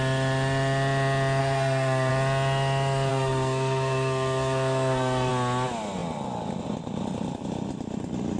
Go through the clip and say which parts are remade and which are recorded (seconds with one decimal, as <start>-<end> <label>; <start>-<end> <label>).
0.0-1.4 recorded; 1.4-2.1 remade; 2.1-3.1 recorded; 3.1-5.3 remade; 5.3-8.4 recorded